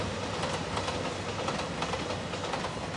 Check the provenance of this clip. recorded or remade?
recorded